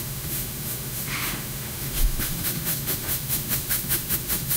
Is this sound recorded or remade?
remade